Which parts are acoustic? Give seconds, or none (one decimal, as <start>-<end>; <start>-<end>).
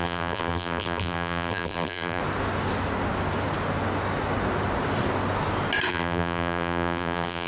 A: 2.2-5.9